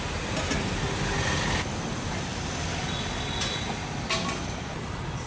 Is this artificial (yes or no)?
no